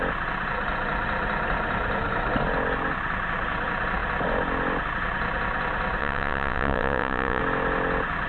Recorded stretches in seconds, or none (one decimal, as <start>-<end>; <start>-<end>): 0.0-6.0; 7.4-8.3